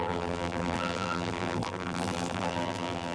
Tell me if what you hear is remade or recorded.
remade